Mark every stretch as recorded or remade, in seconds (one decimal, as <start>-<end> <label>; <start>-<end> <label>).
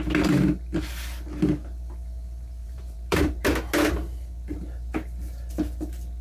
0.0-2.6 recorded; 2.6-3.4 remade; 3.4-6.2 recorded